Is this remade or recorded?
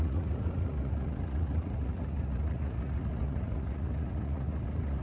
remade